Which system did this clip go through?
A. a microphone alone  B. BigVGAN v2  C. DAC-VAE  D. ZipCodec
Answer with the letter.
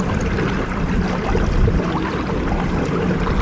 A